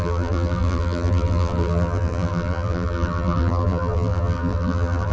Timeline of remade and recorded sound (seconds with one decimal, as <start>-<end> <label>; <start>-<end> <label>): 0.0-5.1 remade